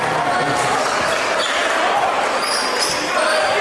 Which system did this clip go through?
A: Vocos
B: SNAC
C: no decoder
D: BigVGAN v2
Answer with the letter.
C